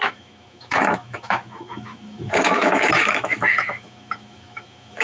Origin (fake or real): fake